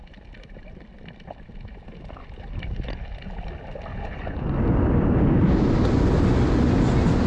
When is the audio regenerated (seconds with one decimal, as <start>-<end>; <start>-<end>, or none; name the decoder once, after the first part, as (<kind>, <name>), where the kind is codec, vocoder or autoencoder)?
3.9-4.5 (vocoder, Vocos)